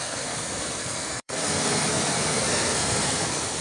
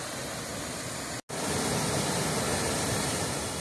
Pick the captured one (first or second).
second